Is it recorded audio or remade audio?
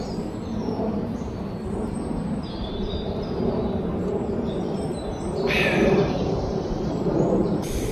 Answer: remade